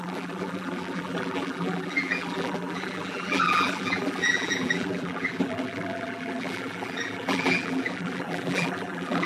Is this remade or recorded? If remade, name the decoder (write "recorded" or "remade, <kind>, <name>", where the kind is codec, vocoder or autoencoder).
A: remade, vocoder, BigVGAN v2